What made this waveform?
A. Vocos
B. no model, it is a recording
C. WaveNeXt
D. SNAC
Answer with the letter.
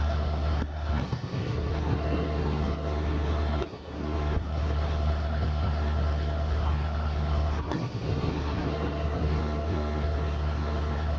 D